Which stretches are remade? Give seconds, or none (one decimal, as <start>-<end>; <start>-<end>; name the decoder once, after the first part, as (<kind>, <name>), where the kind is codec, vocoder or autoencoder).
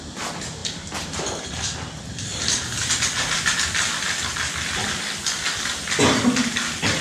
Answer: 0.6-1.9 (vocoder, BigVGAN v2)